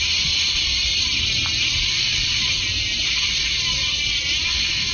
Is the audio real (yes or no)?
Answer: yes